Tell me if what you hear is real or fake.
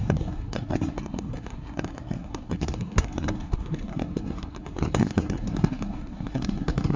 fake